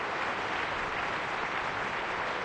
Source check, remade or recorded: recorded